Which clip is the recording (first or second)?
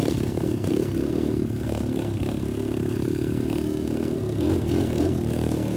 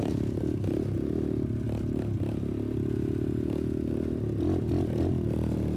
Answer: second